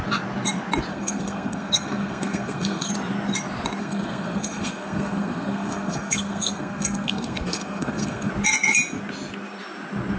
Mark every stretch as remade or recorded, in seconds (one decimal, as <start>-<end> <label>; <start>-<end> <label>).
0.0-0.9 recorded; 0.9-2.9 remade; 2.9-3.8 recorded; 3.8-8.3 remade; 8.3-10.2 recorded